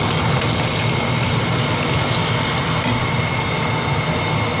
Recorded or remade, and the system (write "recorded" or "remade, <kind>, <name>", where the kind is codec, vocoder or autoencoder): recorded